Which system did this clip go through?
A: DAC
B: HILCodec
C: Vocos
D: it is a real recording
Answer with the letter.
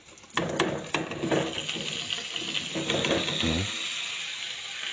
D